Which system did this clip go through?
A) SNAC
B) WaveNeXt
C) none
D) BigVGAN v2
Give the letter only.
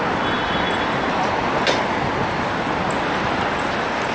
C